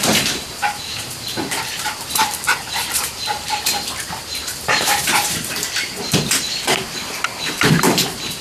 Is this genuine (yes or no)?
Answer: no